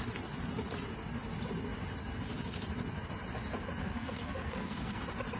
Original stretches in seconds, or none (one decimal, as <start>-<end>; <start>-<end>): 0.0-3.8; 5.0-5.4